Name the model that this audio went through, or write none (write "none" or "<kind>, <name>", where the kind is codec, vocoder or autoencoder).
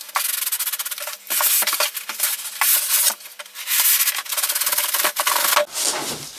none